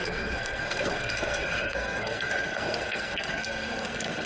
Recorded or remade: remade